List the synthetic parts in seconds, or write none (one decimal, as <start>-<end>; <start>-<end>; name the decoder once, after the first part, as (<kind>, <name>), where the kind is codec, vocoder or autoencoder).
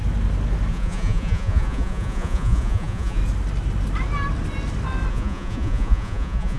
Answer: 0.7-3.2 (vocoder, Vocos); 5.1-6.6